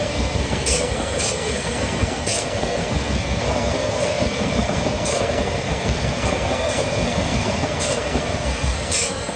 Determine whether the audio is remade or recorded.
remade